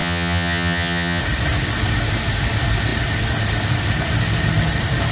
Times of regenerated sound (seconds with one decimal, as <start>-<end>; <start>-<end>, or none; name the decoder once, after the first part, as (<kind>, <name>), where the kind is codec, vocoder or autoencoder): 0.0-1.2 (vocoder, HiFi-GAN)